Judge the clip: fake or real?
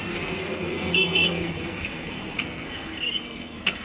fake